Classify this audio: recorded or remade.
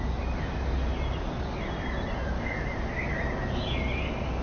recorded